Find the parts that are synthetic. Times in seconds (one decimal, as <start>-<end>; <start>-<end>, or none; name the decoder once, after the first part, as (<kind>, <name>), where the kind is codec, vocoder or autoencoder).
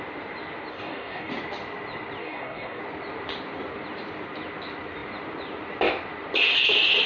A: 0.7-1.3 (codec, DAC); 2.2-2.8